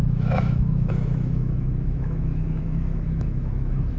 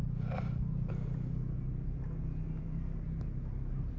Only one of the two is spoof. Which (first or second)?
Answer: first